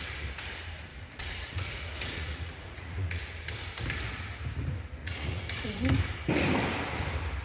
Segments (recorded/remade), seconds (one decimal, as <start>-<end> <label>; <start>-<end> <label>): 0.0-0.9 recorded; 0.9-3.2 remade; 3.2-5.0 recorded; 5.0-5.8 remade; 5.8-7.4 recorded